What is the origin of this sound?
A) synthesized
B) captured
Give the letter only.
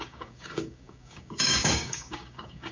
A